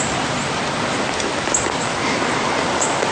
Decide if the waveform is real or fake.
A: real